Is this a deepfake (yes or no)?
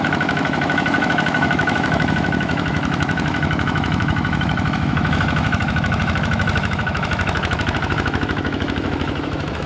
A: yes